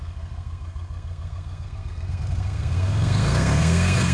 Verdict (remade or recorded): remade